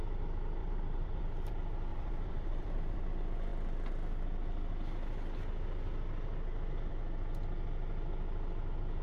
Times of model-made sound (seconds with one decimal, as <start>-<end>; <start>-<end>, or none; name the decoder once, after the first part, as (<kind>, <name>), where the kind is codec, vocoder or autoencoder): 0.6-1.5 (vocoder, BigVGAN v2); 1.9-3.0